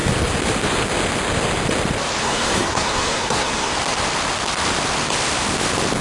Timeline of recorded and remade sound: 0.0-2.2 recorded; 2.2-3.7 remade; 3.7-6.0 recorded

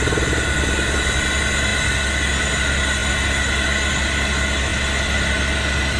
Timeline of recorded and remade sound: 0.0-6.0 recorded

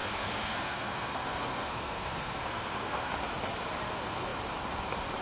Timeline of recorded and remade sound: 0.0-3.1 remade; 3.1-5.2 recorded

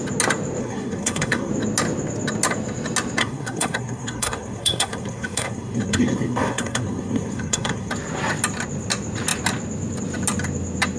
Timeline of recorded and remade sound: 0.0-0.6 recorded; 0.6-1.5 remade; 1.5-3.2 recorded; 3.2-7.9 remade; 7.9-11.0 recorded

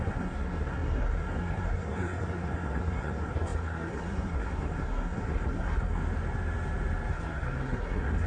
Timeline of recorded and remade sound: 0.0-6.0 remade; 6.0-7.1 recorded; 7.1-8.3 remade

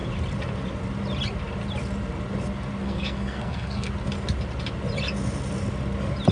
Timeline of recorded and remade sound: 0.0-2.8 recorded; 2.8-3.9 remade; 3.9-6.3 recorded